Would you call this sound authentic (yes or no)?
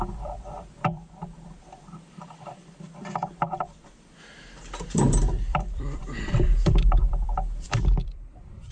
no